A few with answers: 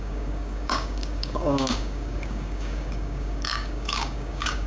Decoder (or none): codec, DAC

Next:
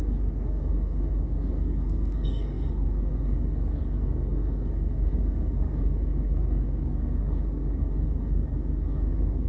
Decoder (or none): codec, SNAC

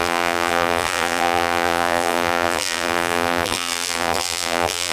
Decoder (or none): vocoder, BigVGAN v2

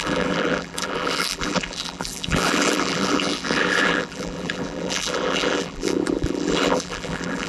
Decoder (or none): vocoder, BigVGAN v2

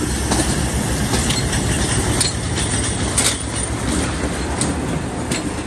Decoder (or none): none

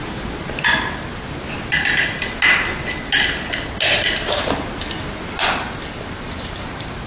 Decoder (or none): none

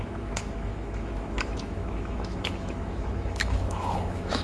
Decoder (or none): autoencoder, DAC-VAE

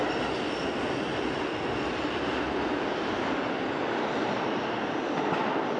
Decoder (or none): none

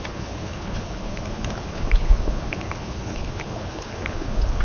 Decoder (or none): codec, HILCodec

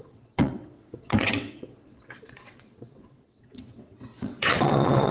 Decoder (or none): vocoder, WaveNeXt